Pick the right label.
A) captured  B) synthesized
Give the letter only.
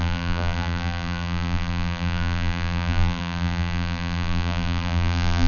B